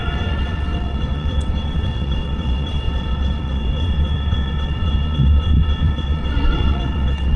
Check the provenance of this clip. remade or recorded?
remade